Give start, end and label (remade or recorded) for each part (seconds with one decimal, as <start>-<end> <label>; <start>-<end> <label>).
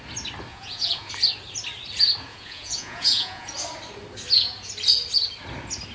0.0-0.5 recorded; 0.5-1.1 remade; 1.1-2.3 recorded; 2.3-3.5 remade; 3.5-5.9 recorded